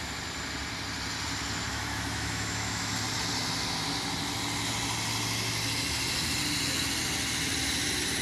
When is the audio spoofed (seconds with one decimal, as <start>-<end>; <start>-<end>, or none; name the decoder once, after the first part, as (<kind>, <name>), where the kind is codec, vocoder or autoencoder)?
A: 1.7-2.9 (autoencoder, DAC-VAE)